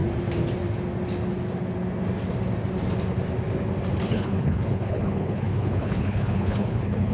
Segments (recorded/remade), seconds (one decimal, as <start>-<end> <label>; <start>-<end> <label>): 0.0-4.1 recorded; 4.1-7.1 remade